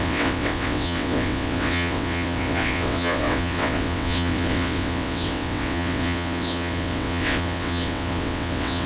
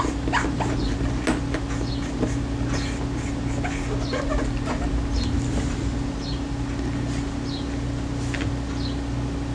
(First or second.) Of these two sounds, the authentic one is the second